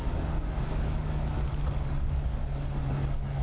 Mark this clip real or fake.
fake